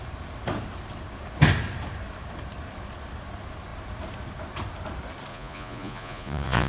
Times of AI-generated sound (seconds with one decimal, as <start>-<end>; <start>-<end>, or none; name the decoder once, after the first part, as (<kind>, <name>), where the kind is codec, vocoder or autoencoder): 5.3-6.7 (vocoder, Vocos)

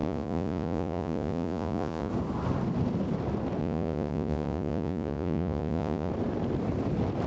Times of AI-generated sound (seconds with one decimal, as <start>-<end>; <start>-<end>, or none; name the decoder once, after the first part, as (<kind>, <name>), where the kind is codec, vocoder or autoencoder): 0.0-2.1 (vocoder, Vocos); 3.6-6.1

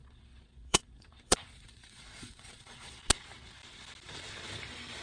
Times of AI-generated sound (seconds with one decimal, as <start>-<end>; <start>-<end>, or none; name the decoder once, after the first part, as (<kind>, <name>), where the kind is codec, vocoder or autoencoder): 0.0-3.0 (vocoder, Vocos)

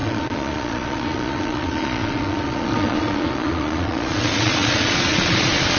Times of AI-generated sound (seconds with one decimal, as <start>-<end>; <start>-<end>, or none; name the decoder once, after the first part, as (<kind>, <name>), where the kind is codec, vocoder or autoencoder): 0.0-5.8 (vocoder, Vocos)

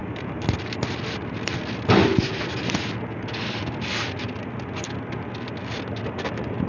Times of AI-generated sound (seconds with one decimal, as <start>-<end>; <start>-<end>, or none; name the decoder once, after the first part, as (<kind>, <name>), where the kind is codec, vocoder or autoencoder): none

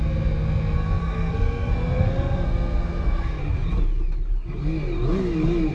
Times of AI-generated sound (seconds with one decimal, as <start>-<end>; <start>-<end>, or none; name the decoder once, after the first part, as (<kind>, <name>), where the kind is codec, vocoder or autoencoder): 1.0-3.4 (codec, SNAC)